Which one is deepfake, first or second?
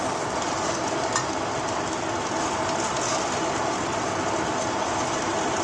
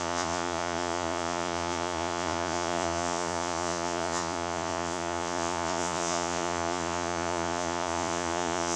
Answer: second